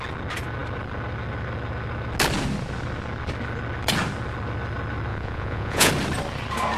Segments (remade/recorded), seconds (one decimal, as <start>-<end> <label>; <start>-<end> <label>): 0.0-5.1 recorded; 5.1-5.9 remade; 5.9-6.8 recorded